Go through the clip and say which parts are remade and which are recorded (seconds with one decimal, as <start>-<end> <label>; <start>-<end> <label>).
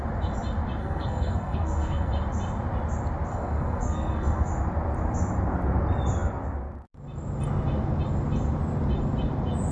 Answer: 0.0-0.8 recorded; 0.8-2.1 remade; 2.1-3.3 recorded; 3.3-4.5 remade; 4.5-9.7 recorded